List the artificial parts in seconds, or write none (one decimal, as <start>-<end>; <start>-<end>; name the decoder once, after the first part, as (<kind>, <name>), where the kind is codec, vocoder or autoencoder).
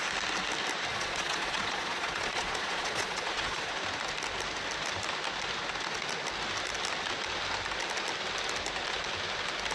0.9-3.7 (vocoder, Vocos)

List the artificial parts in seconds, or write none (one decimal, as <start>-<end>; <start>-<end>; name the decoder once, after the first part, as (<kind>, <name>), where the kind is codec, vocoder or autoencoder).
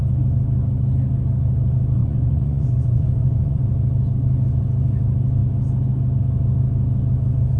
2.0-3.6 (vocoder, Vocos)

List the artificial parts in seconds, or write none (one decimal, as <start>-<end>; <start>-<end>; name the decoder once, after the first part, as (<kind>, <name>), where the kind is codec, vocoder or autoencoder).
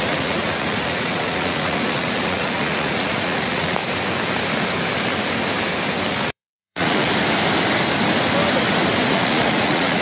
0.0-3.8 (vocoder, Vocos); 6.1-7.1; 9.1-10.0